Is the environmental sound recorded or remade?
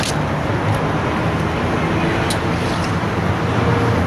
recorded